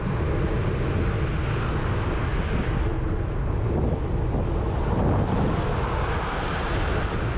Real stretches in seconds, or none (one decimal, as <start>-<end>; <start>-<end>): 0.0-7.4